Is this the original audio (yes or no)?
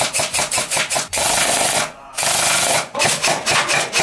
no